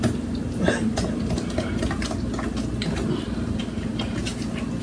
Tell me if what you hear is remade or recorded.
recorded